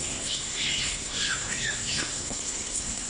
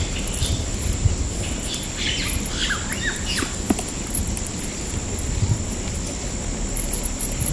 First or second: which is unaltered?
second